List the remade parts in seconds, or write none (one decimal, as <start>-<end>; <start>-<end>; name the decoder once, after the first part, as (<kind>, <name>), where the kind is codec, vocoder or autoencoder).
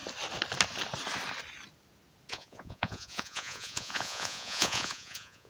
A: 2.3-5.5 (vocoder, Vocos)